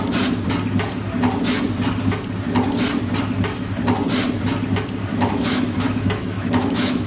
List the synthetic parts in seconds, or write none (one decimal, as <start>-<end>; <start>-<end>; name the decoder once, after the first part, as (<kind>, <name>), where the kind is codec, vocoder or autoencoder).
5.1-7.1 (autoencoder, DAC-VAE)